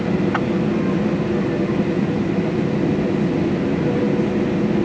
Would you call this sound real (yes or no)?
yes